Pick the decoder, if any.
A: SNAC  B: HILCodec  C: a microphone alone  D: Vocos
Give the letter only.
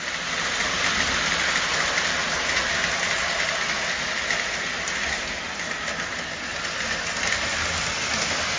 C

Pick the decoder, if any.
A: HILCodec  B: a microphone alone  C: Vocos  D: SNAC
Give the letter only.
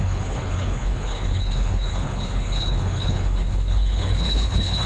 A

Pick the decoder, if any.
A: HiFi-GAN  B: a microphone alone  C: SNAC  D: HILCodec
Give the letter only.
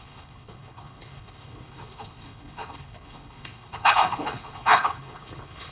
D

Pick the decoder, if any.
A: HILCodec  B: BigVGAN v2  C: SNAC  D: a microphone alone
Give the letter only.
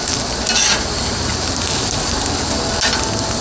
D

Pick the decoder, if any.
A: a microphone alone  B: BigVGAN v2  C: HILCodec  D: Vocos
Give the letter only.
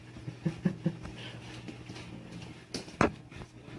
A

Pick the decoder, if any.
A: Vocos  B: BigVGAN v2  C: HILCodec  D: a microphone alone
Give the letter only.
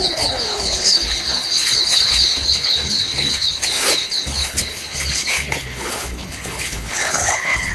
C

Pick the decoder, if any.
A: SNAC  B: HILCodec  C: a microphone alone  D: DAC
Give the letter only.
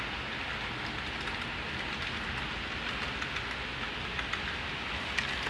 C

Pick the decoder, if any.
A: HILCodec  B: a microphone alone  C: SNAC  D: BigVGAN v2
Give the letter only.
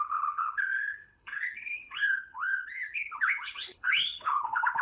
A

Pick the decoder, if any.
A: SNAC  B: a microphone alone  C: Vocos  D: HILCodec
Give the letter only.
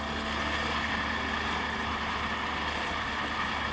B